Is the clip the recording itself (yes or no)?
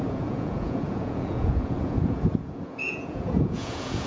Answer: no